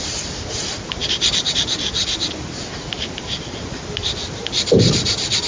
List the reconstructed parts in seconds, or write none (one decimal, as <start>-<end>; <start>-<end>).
none